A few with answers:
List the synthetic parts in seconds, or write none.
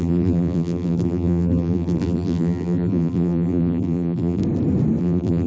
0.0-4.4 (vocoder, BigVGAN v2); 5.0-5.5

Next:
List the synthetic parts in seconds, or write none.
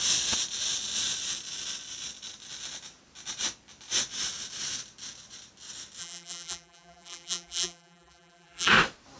6.0-8.7 (vocoder, BigVGAN v2)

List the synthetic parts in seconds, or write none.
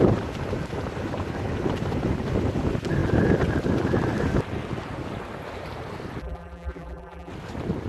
6.2-7.3 (vocoder, BigVGAN v2)